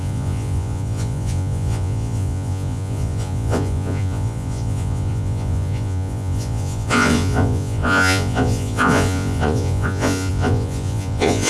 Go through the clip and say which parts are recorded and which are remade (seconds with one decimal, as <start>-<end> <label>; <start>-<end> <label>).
0.0-11.5 remade